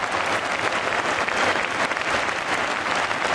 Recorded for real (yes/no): yes